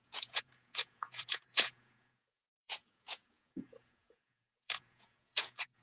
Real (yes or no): no